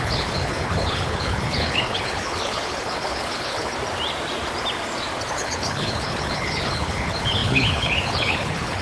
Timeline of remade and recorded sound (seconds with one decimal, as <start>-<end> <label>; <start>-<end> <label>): 0.0-3.7 remade; 3.7-5.3 recorded; 5.3-8.8 remade